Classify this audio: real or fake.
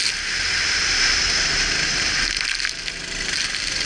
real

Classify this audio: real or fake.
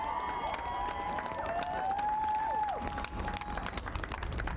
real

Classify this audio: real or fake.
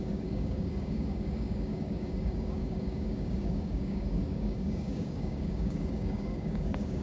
fake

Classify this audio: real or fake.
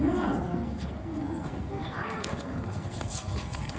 fake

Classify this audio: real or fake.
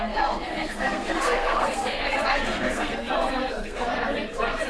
fake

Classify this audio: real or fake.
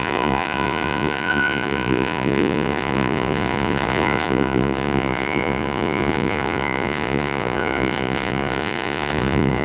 fake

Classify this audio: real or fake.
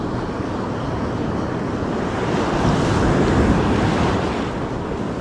real